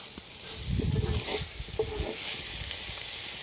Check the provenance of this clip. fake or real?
real